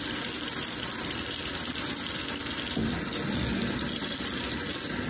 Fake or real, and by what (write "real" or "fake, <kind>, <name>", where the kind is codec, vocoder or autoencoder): real